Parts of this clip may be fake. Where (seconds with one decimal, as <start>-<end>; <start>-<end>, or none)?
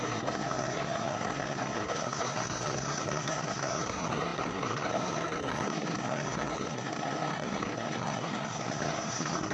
0.0-9.5